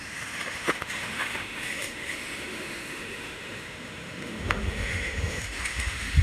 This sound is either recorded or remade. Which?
remade